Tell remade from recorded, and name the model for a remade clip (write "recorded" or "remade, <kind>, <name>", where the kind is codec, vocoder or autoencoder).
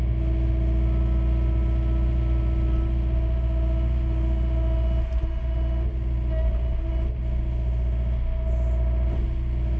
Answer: recorded